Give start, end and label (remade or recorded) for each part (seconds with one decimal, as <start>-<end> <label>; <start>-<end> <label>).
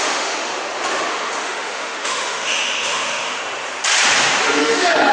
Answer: 0.0-0.5 remade; 0.5-1.1 recorded; 1.1-3.4 remade; 3.4-4.6 recorded; 4.6-5.1 remade